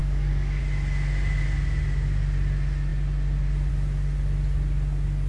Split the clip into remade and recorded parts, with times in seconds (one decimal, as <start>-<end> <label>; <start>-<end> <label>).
0.0-0.6 remade; 0.6-5.3 recorded

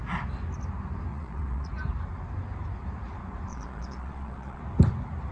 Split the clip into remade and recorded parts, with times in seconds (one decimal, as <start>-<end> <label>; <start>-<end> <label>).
0.0-1.1 recorded; 1.1-1.7 remade; 1.7-3.5 recorded; 3.5-4.6 remade; 4.6-5.3 recorded

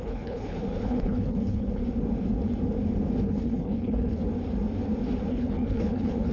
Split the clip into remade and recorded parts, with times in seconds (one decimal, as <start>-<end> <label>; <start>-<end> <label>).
0.0-1.8 remade; 1.8-3.2 recorded; 3.2-4.2 remade; 4.2-5.3 recorded; 5.3-6.3 remade

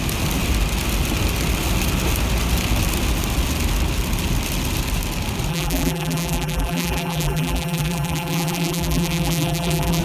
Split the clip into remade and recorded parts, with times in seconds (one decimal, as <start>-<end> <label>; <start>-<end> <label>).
0.0-5.5 recorded; 5.5-10.0 remade

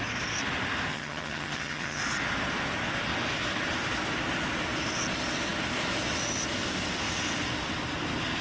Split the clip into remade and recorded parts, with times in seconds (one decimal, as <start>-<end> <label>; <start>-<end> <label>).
0.0-0.9 recorded; 0.9-2.0 remade; 2.0-8.4 recorded

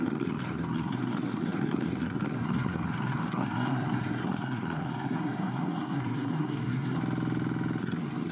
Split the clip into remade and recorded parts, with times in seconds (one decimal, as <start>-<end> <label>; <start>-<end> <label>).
0.0-7.0 remade; 7.0-7.8 recorded; 7.8-8.3 remade

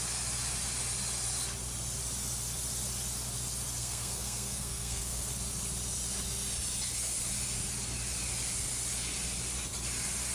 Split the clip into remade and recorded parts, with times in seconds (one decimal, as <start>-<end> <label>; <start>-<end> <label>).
0.0-3.8 recorded; 3.8-5.3 remade; 5.3-10.3 recorded

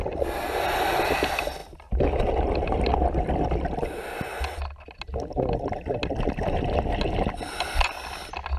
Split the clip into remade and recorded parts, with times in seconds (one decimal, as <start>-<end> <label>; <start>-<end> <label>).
0.0-8.6 recorded